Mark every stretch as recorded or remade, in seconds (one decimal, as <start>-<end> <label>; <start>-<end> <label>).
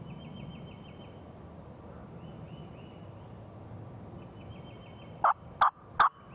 0.0-6.3 recorded